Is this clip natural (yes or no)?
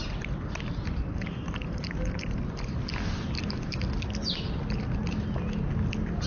yes